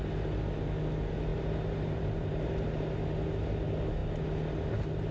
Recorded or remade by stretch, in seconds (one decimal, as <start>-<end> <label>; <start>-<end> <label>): 0.0-1.3 recorded; 1.3-2.3 remade; 2.3-5.1 recorded